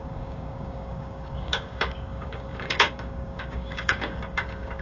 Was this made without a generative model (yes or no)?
no